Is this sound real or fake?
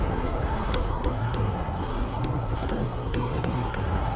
fake